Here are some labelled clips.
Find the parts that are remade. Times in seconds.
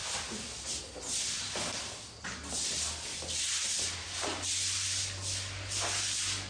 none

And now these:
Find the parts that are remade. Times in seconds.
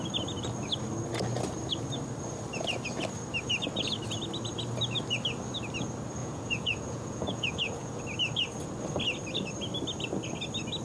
6.2-8.0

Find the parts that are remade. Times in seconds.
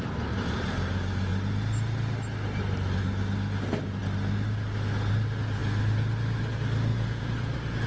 6.9-7.5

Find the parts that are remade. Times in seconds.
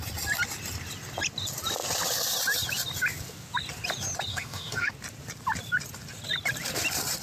4.3-4.9